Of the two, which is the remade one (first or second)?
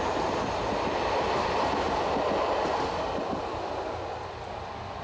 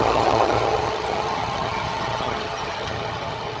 second